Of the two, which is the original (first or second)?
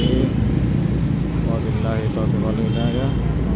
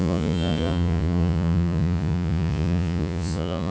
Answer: first